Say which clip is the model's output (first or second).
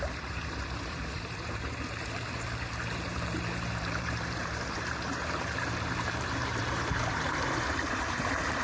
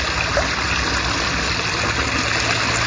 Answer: first